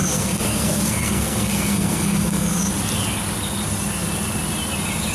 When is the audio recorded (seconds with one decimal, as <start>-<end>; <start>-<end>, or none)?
2.7-5.1